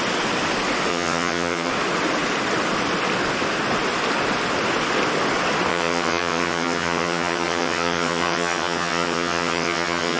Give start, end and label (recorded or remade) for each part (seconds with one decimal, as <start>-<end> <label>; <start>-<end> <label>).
0.0-0.9 recorded; 0.9-1.7 remade; 1.7-5.7 recorded; 5.7-10.2 remade